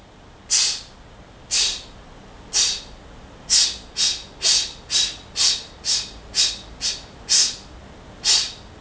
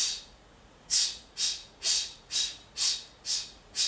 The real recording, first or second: first